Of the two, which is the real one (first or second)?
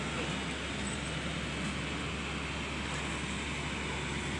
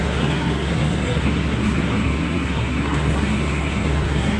first